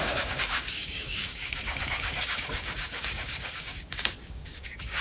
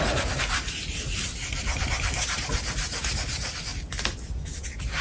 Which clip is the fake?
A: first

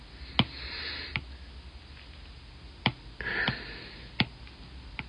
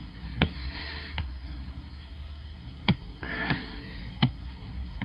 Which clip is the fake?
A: second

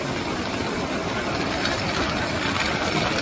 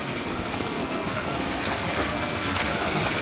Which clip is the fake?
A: second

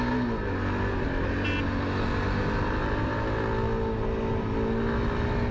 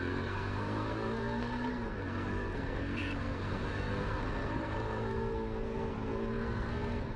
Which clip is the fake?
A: second